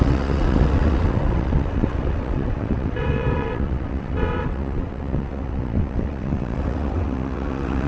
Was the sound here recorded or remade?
remade